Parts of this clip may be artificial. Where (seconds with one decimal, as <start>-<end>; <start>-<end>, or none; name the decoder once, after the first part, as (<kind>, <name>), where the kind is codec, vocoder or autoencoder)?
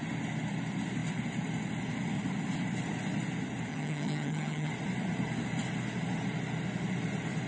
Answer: 3.7-4.7 (vocoder, HiFi-GAN)